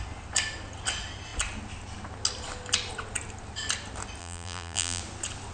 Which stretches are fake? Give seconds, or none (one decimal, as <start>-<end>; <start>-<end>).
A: 4.2-5.0